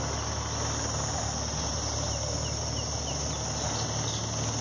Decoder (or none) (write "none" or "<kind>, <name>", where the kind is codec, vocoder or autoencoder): none